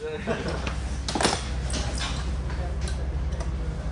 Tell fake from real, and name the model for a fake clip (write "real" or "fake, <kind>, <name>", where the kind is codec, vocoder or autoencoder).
real